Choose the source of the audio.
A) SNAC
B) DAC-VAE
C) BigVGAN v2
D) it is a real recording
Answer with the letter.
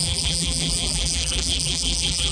C